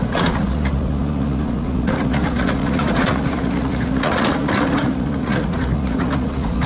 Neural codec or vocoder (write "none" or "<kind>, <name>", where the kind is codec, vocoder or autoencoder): vocoder, Vocos